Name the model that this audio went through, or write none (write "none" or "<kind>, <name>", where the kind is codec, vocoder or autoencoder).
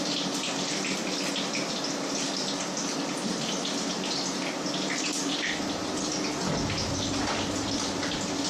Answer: none